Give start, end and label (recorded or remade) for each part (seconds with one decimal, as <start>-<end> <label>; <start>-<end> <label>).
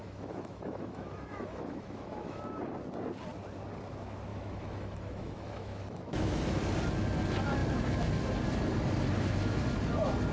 0.0-2.4 remade; 2.4-4.3 recorded; 4.3-6.6 remade; 6.6-10.3 recorded